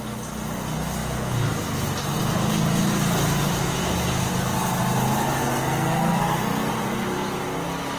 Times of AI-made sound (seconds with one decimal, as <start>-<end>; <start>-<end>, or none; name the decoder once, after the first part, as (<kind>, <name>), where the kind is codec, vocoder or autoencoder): 5.4-6.7 (codec, SNAC)